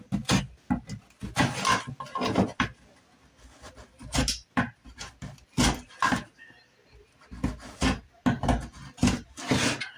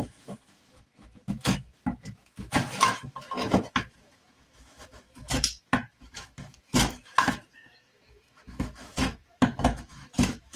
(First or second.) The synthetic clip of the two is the second